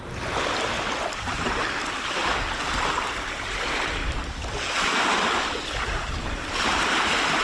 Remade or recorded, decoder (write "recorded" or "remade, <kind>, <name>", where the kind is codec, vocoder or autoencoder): recorded